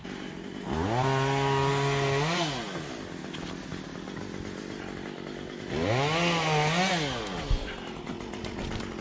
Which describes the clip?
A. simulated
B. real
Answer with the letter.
B